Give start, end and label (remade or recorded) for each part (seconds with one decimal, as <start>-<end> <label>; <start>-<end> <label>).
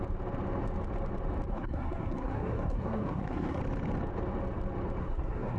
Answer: 0.0-1.5 recorded; 1.5-3.6 remade; 3.6-5.0 recorded; 5.0-5.6 remade